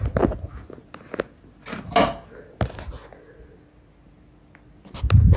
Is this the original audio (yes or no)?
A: yes